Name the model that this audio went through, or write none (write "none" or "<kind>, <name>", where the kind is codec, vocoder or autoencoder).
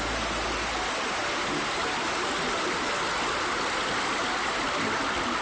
none